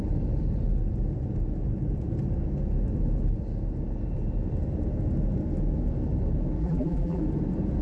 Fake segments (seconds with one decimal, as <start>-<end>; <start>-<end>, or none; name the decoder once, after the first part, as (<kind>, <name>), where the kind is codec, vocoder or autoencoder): 6.6-7.2 (vocoder, BigVGAN v2)